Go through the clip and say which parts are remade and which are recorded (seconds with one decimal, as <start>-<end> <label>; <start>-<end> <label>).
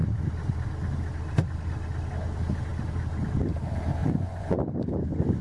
0.0-4.0 recorded; 4.0-4.6 remade; 4.6-5.4 recorded